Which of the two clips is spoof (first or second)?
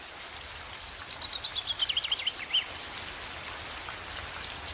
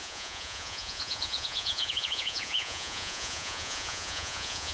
second